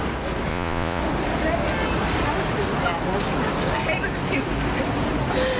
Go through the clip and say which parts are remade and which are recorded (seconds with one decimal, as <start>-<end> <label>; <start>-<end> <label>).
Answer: 0.0-0.5 recorded; 0.5-1.0 remade; 1.0-5.6 recorded